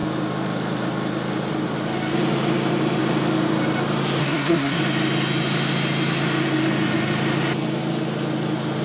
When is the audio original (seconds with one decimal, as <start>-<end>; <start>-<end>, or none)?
0.0-4.2; 4.8-8.8